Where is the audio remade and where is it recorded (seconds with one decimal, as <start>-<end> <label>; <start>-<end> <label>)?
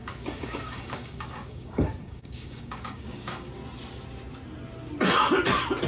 0.0-3.5 remade; 3.5-5.9 recorded